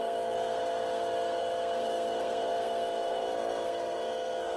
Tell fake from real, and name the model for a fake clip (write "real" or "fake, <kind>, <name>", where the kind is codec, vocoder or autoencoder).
fake, codec, SNAC